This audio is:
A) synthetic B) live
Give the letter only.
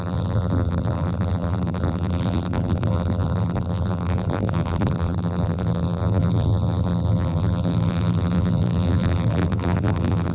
A